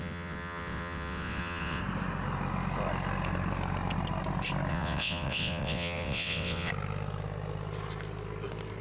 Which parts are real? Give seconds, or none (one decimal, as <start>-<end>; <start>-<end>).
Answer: 1.8-4.7; 6.7-8.8